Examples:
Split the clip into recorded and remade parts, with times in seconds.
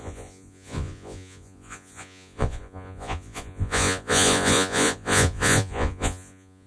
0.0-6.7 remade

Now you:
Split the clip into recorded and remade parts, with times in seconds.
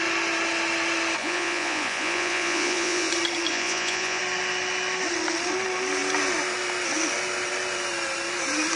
0.0-1.2 recorded; 1.2-3.1 remade; 3.1-3.5 recorded; 3.5-4.2 remade; 4.2-8.8 recorded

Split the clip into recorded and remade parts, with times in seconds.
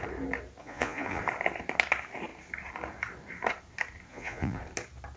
0.0-0.6 recorded; 0.6-1.2 remade; 1.2-4.1 recorded; 4.1-4.6 remade; 4.6-5.2 recorded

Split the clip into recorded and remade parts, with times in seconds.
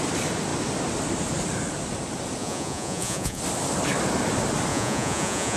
0.0-2.4 recorded; 2.4-3.4 remade; 3.4-4.7 recorded; 4.7-5.6 remade